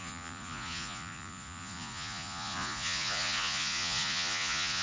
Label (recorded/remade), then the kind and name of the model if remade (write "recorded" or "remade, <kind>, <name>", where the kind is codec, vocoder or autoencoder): remade, vocoder, Vocos